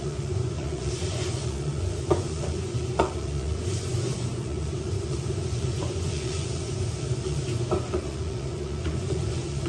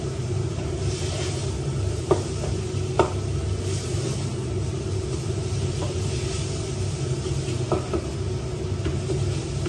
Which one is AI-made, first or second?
first